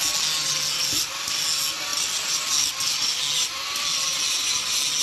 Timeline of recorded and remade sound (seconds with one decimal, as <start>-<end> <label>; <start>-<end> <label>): 0.0-5.0 recorded